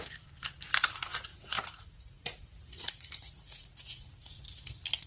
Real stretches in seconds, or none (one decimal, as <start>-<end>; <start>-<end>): 0.0-1.3; 4.4-5.1